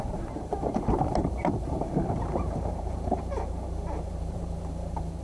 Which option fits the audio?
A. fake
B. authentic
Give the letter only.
A